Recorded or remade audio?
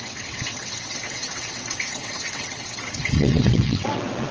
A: remade